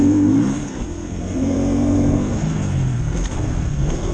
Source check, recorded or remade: remade